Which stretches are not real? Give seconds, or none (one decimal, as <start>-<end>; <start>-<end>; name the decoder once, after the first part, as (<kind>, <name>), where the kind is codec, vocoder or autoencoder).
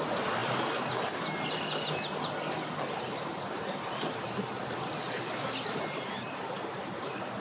none